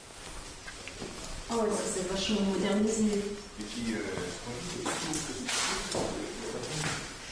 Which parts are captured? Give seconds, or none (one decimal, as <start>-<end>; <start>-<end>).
0.0-7.3

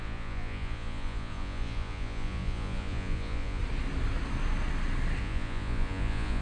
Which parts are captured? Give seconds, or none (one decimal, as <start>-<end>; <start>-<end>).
3.6-5.2

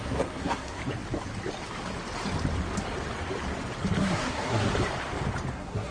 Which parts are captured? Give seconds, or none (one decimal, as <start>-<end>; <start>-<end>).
0.8-4.0; 4.7-5.5

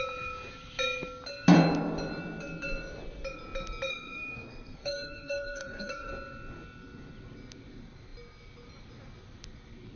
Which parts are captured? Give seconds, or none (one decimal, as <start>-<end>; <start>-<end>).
0.0-3.9; 6.1-10.0

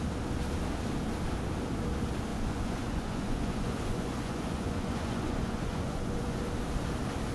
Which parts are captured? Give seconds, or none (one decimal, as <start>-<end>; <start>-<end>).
0.0-2.3; 6.4-7.3

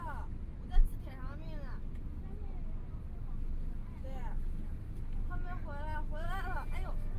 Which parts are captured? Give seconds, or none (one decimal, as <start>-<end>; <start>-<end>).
0.0-7.2

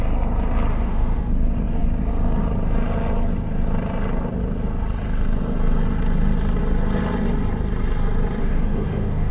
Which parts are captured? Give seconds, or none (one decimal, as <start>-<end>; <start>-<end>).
0.0-0.7; 1.3-8.4

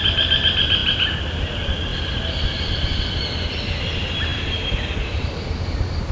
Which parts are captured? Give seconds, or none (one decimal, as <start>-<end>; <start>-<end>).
0.0-0.8; 1.5-1.9; 2.8-6.1